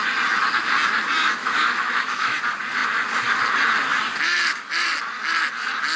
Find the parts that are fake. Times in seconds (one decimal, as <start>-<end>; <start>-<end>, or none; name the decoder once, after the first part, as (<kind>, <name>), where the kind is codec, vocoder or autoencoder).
1.4-2.4 (autoencoder, DAC-VAE)